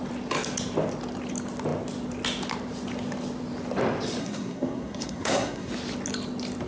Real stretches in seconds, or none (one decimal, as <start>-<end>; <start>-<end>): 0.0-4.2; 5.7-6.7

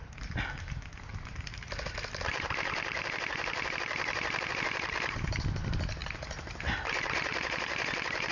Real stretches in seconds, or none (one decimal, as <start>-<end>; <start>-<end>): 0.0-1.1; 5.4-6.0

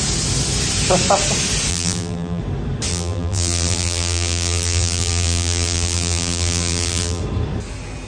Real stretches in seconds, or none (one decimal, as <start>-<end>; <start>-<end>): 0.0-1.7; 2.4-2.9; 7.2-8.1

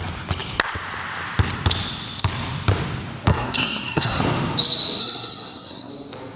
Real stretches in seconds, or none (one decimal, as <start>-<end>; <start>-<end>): 0.0-3.3; 4.2-5.0; 5.9-6.4